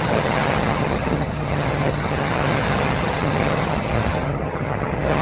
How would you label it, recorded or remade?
remade